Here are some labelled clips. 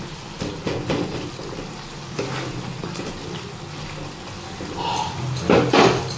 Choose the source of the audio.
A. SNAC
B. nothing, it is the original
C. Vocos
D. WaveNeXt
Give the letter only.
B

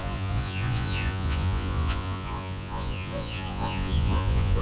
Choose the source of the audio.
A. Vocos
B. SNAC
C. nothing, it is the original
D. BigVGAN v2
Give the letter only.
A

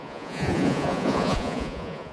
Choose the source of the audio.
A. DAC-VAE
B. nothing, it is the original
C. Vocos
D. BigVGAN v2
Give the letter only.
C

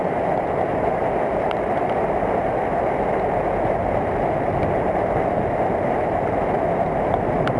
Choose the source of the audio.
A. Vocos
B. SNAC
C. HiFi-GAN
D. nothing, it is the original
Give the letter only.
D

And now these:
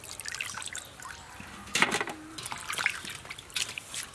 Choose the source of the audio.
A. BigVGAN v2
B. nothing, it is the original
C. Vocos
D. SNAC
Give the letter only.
B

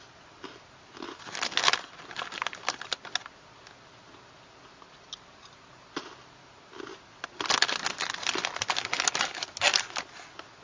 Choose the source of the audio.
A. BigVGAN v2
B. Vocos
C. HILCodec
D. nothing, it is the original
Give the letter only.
D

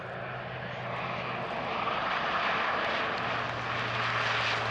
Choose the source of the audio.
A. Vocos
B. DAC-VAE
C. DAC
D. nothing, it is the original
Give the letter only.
D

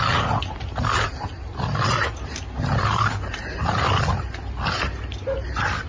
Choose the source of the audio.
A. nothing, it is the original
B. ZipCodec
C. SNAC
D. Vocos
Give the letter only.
A